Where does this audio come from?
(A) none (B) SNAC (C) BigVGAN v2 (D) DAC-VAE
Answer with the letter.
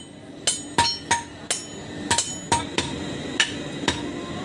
A